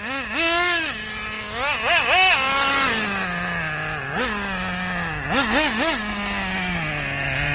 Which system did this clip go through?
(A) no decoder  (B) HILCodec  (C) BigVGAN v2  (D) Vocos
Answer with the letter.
A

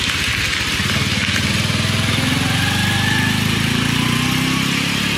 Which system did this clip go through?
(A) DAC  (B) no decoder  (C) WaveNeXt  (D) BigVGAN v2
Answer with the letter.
B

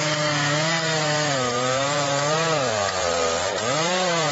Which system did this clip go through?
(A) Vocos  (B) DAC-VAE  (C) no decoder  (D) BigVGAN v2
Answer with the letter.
D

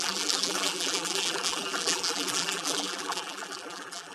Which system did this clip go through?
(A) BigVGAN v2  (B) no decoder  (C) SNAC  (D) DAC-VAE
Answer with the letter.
A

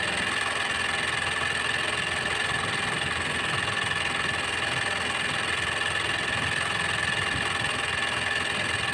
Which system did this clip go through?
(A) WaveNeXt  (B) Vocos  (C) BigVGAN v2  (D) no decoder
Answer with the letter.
D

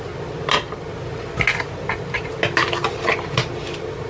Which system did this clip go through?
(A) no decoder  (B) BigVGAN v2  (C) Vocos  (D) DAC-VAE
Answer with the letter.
A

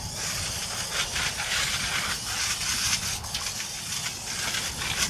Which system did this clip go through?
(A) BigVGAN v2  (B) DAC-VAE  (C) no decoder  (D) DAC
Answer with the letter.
C